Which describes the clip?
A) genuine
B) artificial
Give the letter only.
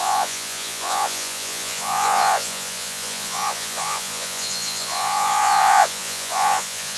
B